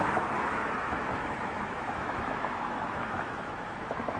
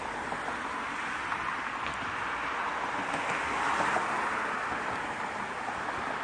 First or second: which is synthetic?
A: first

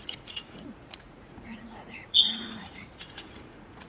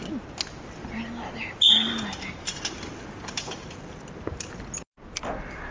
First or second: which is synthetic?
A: first